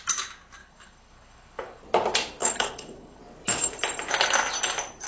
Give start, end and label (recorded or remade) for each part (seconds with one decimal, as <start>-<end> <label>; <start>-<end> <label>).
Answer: 0.0-0.6 recorded; 0.6-1.8 remade; 1.8-2.4 recorded; 2.4-3.2 remade; 3.2-5.1 recorded

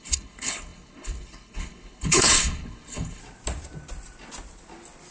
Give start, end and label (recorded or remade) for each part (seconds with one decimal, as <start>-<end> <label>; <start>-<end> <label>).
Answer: 0.0-3.2 remade; 3.2-5.1 recorded